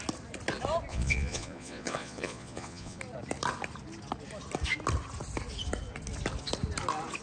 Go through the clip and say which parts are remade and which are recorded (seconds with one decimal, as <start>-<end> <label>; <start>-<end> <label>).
0.0-0.9 recorded; 0.9-3.0 remade; 3.0-7.2 recorded